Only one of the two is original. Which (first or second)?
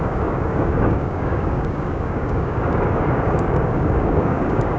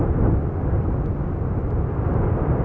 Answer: second